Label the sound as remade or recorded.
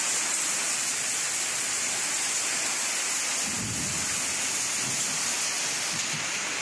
recorded